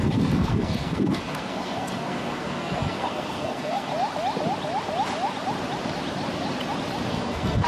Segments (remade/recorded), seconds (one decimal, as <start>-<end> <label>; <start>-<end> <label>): 0.0-3.9 remade; 3.9-7.1 recorded; 7.1-7.7 remade